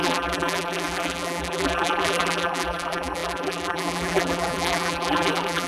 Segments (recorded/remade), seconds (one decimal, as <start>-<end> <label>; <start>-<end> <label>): 0.0-5.7 remade